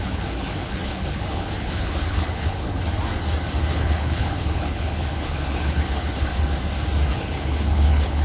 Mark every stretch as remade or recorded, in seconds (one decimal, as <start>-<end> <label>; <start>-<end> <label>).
0.0-2.9 remade; 2.9-3.7 recorded; 3.7-6.3 remade; 6.3-7.1 recorded; 7.1-8.2 remade